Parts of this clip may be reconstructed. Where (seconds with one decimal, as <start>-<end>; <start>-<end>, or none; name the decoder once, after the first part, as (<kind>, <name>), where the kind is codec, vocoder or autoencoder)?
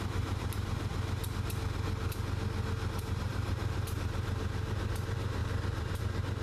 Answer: 0.0-0.9 (vocoder, BigVGAN v2); 2.9-6.4